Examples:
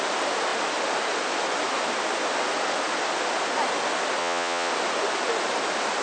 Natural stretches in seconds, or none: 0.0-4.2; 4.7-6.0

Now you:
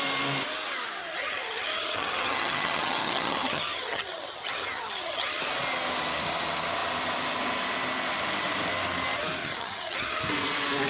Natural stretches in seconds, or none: 0.0-1.2; 5.4-9.4; 10.2-10.9

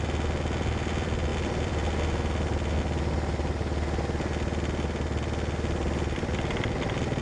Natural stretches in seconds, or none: 0.0-7.2

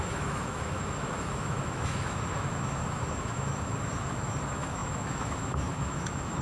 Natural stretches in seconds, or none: none